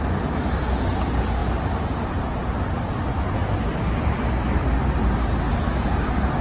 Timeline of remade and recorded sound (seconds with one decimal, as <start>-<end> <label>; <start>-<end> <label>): 0.0-6.4 recorded